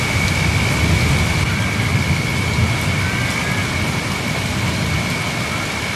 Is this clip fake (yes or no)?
no